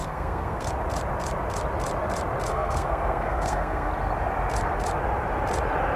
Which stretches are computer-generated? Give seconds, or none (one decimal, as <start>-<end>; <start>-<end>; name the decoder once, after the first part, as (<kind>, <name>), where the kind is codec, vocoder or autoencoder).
0.0-0.7 (codec, SNAC); 2.5-3.9